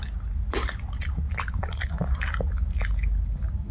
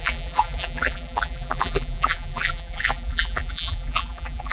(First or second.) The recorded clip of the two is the first